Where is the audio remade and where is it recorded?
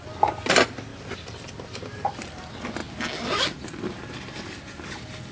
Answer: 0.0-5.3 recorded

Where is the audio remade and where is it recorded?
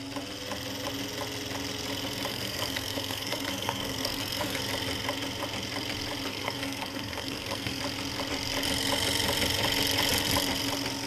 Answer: 0.0-2.3 recorded; 2.3-4.6 remade; 4.6-6.3 recorded; 6.3-7.8 remade; 7.8-11.1 recorded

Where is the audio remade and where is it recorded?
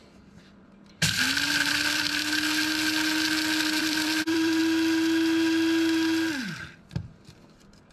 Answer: 0.0-2.2 remade; 2.2-3.8 recorded; 3.8-4.6 remade; 4.6-7.9 recorded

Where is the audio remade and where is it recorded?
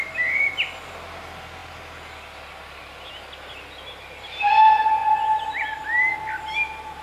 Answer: 0.0-7.0 recorded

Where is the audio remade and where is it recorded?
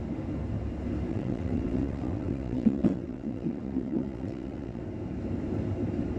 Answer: 0.0-1.1 recorded; 1.1-4.8 remade; 4.8-6.2 recorded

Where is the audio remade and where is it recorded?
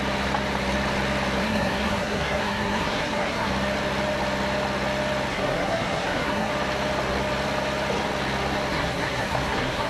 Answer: 0.0-1.4 recorded; 1.4-3.5 remade; 3.5-5.3 recorded; 5.3-6.5 remade; 6.5-8.7 recorded; 8.7-9.9 remade